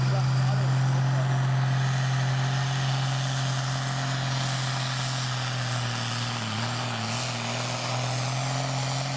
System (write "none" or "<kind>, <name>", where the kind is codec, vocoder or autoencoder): none